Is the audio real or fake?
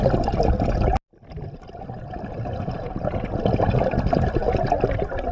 real